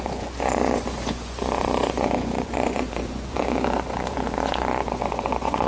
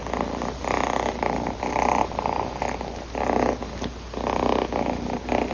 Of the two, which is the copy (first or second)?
first